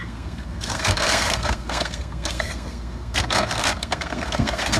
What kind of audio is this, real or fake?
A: fake